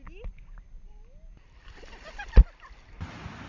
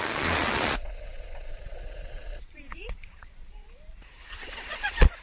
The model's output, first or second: second